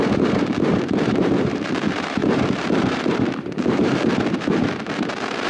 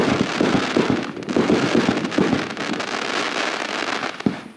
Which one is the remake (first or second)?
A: first